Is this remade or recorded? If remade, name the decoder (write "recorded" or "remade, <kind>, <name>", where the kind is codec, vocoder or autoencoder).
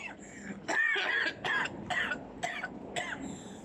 recorded